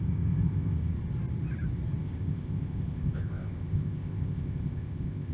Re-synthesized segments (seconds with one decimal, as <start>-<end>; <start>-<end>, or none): 0.0-0.9; 2.0-5.3